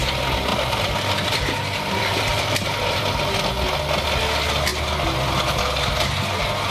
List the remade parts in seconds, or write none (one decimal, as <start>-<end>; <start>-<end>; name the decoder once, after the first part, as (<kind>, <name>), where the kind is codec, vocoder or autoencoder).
0.5-3.2 (vocoder, BigVGAN v2)